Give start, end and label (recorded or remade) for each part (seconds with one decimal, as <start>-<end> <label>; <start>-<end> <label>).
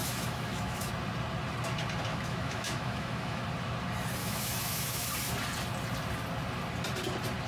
0.0-0.9 remade; 0.9-2.1 recorded; 2.1-3.4 remade; 3.4-4.2 recorded; 4.2-5.1 remade; 5.1-7.5 recorded